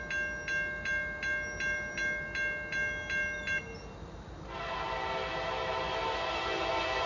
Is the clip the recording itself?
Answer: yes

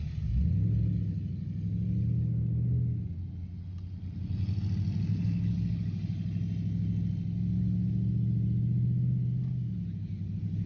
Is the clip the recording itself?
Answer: yes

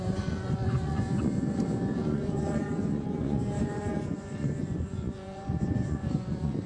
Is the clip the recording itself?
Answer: no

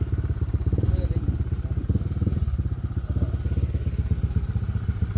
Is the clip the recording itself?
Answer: yes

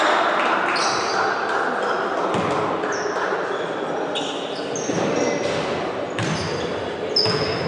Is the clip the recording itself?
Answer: yes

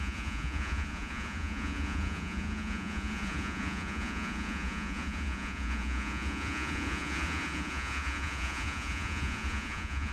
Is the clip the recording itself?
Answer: no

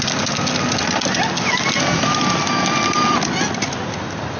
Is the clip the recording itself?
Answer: yes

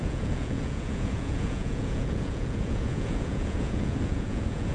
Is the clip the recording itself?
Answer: no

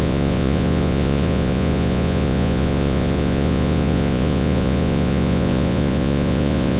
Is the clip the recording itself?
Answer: no